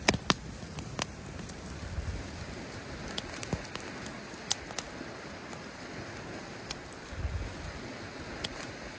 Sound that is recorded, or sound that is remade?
recorded